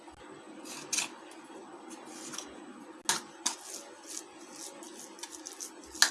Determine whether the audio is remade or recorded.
recorded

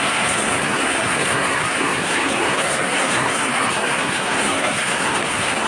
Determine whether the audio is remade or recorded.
remade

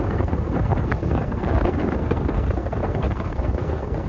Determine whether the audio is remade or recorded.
remade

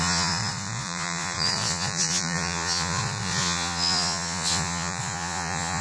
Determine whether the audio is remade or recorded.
remade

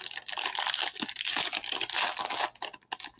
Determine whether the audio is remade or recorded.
recorded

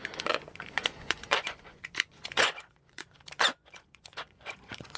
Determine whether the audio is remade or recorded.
remade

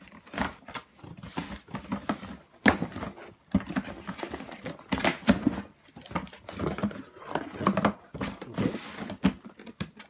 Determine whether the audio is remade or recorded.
recorded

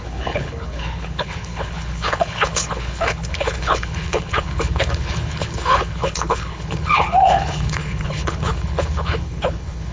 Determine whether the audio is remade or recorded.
remade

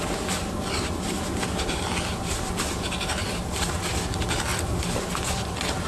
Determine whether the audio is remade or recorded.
remade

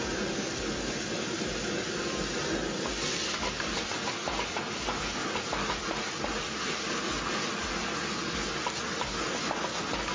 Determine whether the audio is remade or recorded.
recorded